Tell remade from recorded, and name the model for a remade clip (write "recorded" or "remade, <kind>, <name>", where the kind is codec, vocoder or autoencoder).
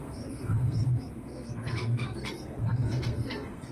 remade, codec, SNAC